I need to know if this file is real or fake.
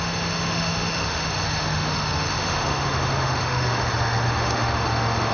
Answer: fake